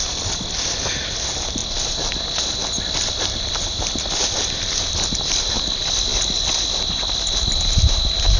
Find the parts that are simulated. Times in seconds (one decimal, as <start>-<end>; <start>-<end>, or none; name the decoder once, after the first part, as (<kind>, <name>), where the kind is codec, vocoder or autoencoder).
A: none

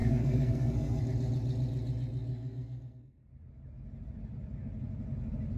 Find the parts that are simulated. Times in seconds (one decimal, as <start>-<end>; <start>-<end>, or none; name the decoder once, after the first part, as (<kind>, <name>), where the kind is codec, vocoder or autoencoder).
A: 0.0-1.0 (codec, SNAC); 2.3-3.3

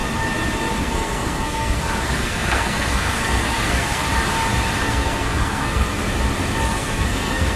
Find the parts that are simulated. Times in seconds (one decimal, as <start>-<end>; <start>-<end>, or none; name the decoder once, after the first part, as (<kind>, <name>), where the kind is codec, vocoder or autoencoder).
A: 0.8-4.0 (codec, SNAC); 4.8-6.0; 6.7-7.6

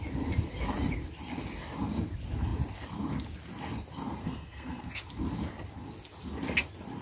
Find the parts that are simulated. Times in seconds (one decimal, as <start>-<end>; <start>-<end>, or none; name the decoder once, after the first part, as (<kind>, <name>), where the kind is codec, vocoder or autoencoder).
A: 4.2-4.9 (codec, SNAC)